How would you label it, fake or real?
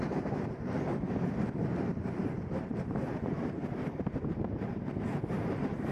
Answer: fake